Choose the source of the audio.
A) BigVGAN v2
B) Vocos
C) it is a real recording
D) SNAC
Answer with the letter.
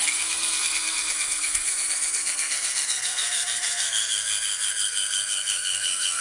D